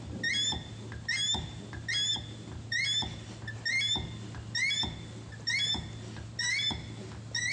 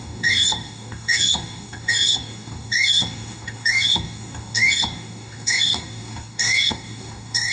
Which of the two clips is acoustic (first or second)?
first